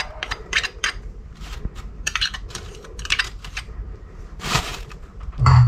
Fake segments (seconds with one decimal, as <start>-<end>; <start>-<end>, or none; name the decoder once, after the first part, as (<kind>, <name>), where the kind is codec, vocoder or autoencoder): 0.0-5.7 (vocoder, BigVGAN v2)